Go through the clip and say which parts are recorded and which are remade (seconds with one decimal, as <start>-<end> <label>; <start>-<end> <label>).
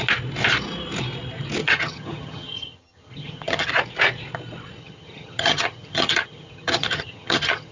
0.0-1.6 recorded; 1.6-3.7 remade; 3.7-4.8 recorded; 4.8-7.7 remade